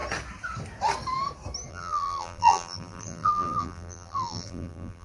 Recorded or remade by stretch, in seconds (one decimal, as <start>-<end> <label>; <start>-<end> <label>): 0.0-1.7 recorded; 1.7-5.0 remade